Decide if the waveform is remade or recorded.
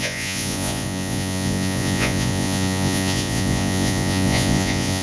remade